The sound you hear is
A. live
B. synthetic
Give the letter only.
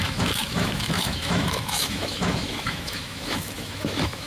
B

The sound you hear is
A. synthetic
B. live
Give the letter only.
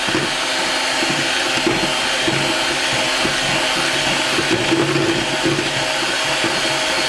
B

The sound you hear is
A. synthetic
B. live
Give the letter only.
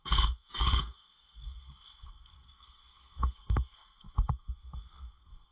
A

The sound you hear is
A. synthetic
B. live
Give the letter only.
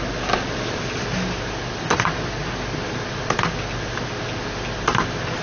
B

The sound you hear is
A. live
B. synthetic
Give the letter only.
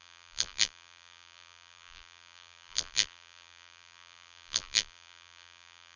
B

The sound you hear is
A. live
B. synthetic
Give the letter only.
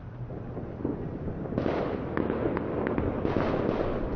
A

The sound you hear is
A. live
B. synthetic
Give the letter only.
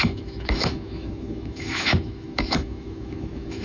B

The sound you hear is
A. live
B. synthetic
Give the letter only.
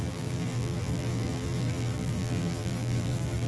B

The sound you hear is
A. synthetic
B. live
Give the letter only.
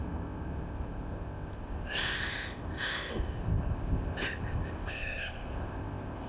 A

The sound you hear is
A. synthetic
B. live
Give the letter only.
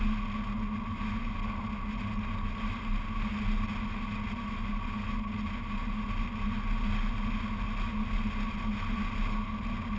B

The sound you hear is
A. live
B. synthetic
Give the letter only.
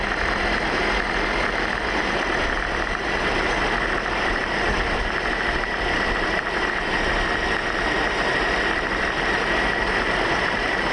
A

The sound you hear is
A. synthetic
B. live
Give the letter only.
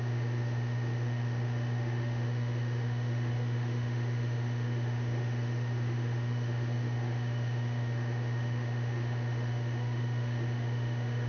A